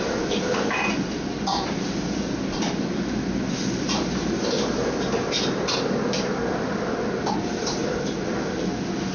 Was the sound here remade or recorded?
recorded